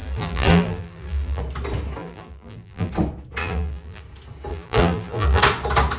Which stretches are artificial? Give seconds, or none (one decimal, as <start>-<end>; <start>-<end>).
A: 0.0-1.4; 2.0-2.9; 3.4-4.0; 4.5-5.4